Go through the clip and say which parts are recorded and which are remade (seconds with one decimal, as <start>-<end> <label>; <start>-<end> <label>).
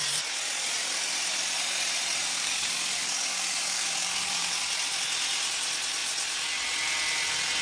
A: 0.0-2.3 recorded; 2.3-4.6 remade; 4.6-7.6 recorded